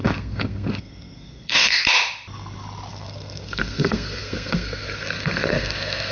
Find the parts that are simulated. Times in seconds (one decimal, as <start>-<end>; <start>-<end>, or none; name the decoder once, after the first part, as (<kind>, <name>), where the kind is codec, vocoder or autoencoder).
0.0-1.8 (codec, SNAC); 2.9-6.1